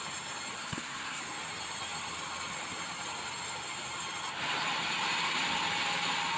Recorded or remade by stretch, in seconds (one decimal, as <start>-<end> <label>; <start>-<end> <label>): 0.0-0.6 recorded; 0.6-1.2 remade; 1.2-6.4 recorded